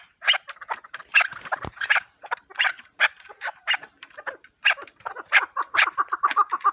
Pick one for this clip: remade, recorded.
remade